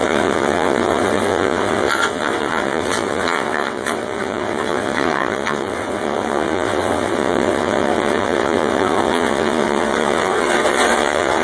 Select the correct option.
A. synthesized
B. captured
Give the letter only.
A